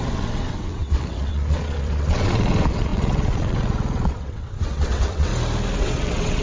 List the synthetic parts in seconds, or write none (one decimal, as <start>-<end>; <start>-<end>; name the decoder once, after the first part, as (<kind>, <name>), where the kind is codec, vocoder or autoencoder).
0.0-5.3 (vocoder, WaveNeXt); 5.8-6.4